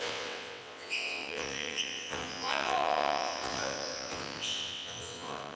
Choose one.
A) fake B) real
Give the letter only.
A